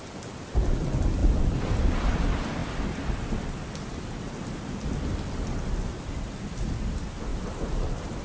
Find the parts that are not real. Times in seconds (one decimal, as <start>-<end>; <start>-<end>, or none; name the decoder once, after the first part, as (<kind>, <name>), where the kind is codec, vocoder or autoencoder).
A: 7.3-8.2 (vocoder, BigVGAN v2)